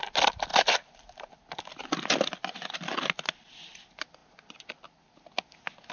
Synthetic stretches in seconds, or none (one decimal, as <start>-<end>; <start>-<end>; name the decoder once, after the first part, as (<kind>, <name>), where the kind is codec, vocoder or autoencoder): none